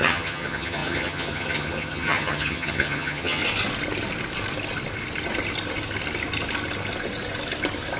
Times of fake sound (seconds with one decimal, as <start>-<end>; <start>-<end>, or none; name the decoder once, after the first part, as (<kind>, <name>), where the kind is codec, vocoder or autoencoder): 0.0-3.4 (vocoder, HiFi-GAN)

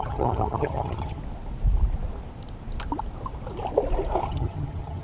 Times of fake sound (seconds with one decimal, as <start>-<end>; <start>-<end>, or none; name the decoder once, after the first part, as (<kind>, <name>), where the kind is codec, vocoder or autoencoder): 0.0-1.2 (vocoder, HiFi-GAN); 4.2-5.0

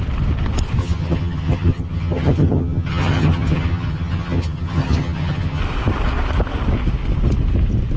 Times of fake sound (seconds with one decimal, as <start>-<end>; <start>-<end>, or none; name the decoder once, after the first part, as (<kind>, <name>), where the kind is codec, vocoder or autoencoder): 0.8-5.6 (vocoder, HiFi-GAN)

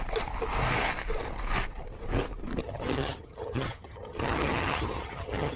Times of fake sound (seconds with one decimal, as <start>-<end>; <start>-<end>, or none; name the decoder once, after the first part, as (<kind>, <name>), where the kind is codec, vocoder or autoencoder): 2.6-5.6 (vocoder, HiFi-GAN)

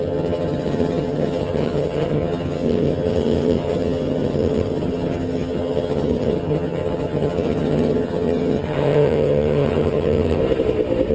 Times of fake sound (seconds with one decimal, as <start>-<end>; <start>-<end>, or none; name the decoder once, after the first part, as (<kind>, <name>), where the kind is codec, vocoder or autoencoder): 0.0-10.4 (vocoder, HiFi-GAN)

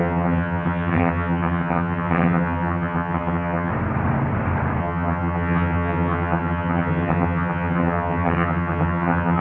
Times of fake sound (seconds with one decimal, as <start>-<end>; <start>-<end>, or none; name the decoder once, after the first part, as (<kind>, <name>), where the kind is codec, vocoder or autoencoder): 0.0-3.7 (vocoder, HiFi-GAN); 4.8-9.4

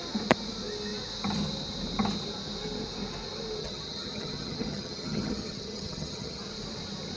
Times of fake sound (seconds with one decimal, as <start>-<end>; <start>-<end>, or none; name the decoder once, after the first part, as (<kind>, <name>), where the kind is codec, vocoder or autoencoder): 3.6-6.4 (vocoder, HiFi-GAN)